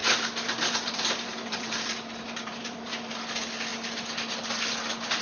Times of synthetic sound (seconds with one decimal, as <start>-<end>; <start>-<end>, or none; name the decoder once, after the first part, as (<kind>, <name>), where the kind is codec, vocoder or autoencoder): 0.0-3.1 (vocoder, BigVGAN v2)